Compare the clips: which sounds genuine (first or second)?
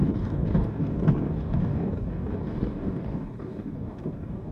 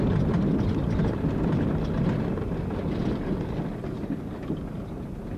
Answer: second